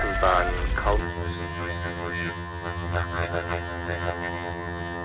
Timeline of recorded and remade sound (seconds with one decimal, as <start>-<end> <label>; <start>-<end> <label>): 0.0-1.0 recorded; 1.0-5.0 remade